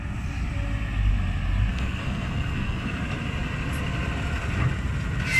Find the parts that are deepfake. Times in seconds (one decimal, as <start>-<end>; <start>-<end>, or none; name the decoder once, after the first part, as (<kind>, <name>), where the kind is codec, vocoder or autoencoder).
1.7-3.0 (codec, SNAC)